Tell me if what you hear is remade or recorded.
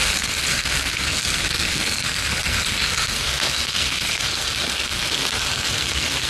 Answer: remade